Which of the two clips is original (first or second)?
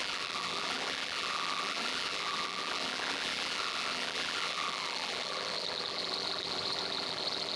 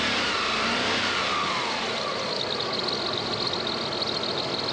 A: second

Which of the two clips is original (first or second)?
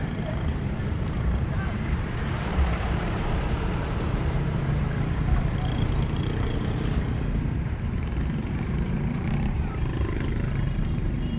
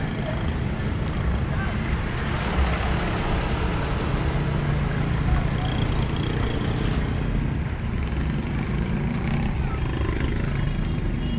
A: second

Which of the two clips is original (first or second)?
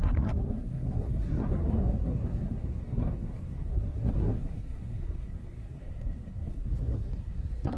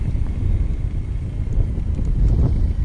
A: second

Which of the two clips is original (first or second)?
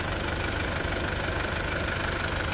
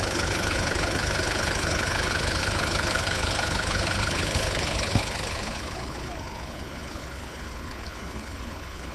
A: first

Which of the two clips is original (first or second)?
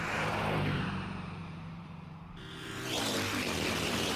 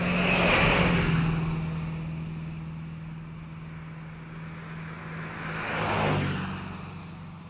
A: second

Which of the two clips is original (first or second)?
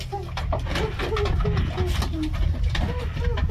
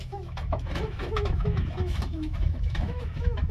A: first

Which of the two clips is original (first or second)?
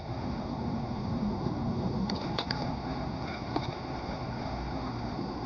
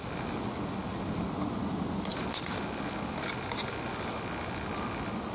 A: second